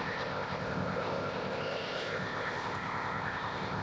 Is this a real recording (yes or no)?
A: no